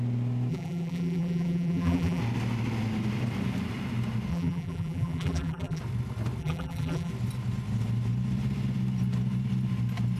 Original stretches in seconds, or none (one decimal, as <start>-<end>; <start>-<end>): 0.0-0.5; 2.2-4.3; 5.8-6.4; 7.1-10.2